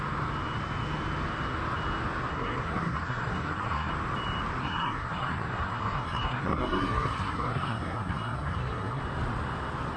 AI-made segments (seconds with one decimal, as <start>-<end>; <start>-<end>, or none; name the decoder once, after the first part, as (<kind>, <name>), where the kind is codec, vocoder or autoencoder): 2.3-3.9 (codec, SNAC); 4.6-9.0